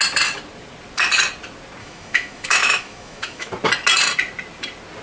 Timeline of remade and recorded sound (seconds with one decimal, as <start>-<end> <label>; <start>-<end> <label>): 0.0-1.8 recorded; 1.8-3.5 remade; 3.5-5.0 recorded